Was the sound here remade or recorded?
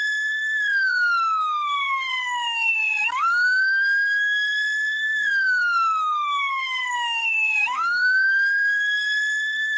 remade